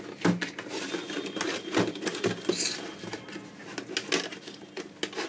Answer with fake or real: real